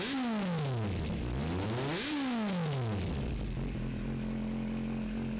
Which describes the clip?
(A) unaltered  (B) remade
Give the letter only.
A